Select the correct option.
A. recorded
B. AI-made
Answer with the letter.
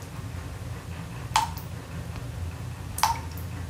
A